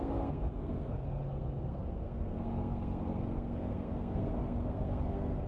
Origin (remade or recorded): remade